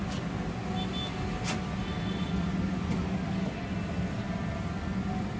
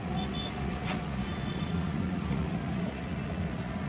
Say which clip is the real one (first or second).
first